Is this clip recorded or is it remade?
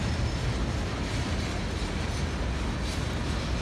recorded